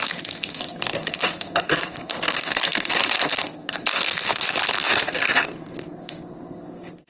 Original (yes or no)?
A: no